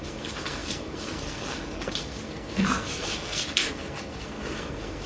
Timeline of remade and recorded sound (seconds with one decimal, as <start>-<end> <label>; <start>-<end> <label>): 0.0-5.1 remade